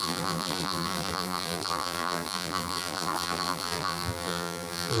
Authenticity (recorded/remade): remade